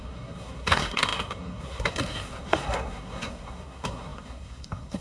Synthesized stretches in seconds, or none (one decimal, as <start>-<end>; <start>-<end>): 0.0-5.0